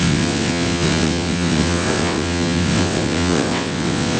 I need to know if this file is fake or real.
fake